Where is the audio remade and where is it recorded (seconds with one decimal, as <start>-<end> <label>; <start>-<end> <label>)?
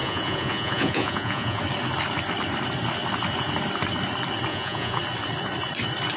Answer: 0.0-1.6 remade; 1.6-4.5 recorded; 4.5-5.0 remade; 5.0-6.2 recorded